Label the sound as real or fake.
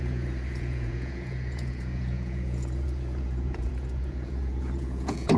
fake